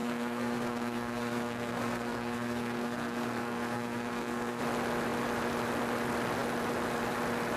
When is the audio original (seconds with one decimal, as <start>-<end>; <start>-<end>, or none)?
4.6-7.6